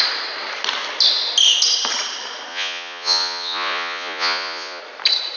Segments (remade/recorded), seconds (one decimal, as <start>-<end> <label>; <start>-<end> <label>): 0.0-2.5 recorded; 2.5-4.8 remade; 4.8-5.4 recorded